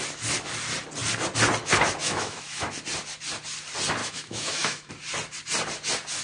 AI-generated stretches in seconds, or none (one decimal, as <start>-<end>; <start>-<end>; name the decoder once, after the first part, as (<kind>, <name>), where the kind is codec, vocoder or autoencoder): 2.0-2.7 (autoencoder, DAC-VAE); 4.0-4.9